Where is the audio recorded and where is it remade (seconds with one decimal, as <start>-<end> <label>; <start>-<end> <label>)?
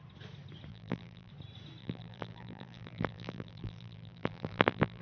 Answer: 0.0-0.7 recorded; 0.7-1.3 remade; 1.3-1.8 recorded; 1.8-5.0 remade